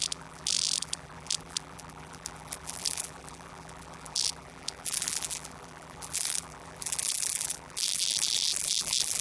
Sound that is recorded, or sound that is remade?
remade